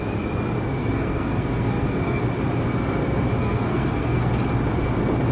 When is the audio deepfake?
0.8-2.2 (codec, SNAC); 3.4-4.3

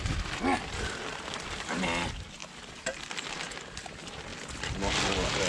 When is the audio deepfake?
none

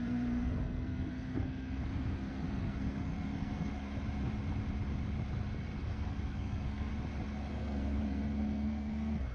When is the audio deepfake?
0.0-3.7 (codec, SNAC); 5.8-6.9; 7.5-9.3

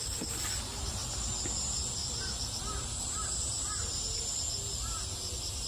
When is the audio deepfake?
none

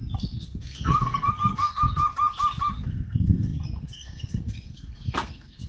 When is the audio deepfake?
0.0-2.0 (codec, SNAC); 2.7-5.7